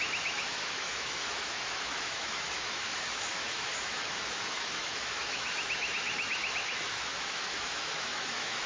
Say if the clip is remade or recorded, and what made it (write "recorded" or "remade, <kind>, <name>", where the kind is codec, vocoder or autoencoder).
remade, autoencoder, DAC-VAE